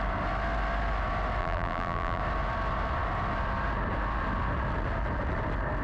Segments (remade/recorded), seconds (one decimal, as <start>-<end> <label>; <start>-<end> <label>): 0.0-1.4 recorded; 1.4-2.2 remade; 2.2-5.8 recorded